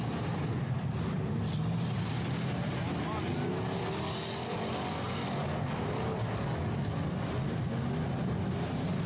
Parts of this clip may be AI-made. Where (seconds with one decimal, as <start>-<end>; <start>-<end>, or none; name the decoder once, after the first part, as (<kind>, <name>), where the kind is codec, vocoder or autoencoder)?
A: 0.0-0.8 (vocoder, BigVGAN v2)